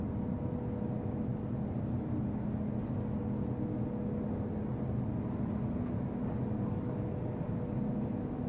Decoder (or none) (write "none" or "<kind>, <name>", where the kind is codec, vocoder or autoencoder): none